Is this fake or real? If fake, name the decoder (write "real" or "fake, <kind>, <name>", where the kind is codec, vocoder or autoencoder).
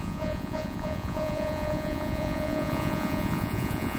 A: fake, vocoder, Vocos